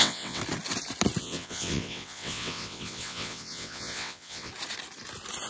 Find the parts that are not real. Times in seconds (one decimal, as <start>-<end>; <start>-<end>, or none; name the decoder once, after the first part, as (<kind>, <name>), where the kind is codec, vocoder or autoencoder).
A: 0.0-0.4 (vocoder, WaveNeXt); 1.2-4.5